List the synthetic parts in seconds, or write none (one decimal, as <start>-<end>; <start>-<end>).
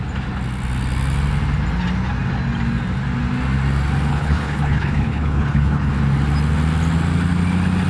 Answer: 4.1-5.9